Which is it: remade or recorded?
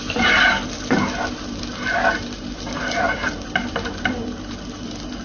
remade